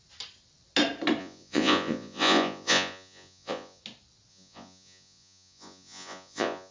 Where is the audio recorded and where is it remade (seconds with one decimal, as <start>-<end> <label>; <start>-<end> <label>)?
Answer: 0.0-1.2 recorded; 1.2-3.8 remade; 3.8-4.3 recorded; 4.3-6.7 remade